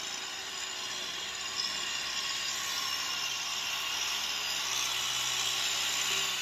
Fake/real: real